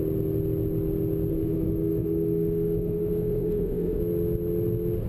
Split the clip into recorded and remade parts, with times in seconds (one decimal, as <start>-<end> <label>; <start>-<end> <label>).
0.0-1.3 recorded; 1.3-4.0 remade; 4.0-5.1 recorded